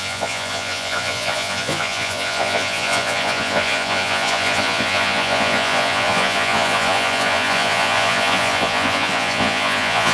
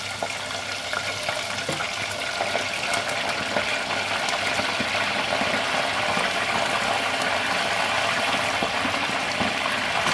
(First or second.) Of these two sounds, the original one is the second